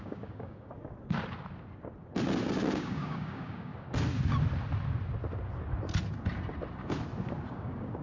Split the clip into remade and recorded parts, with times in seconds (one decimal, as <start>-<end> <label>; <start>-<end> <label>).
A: 0.0-0.8 remade; 0.8-2.7 recorded; 2.7-3.7 remade; 3.7-7.5 recorded; 7.5-8.0 remade